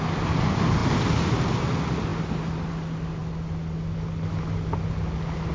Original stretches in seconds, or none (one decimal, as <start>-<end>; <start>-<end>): 0.0-5.5